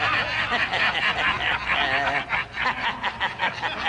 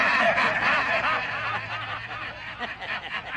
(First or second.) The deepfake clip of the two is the second